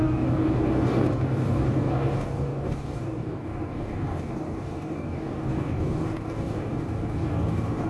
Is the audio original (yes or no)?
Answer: no